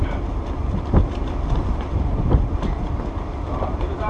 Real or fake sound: fake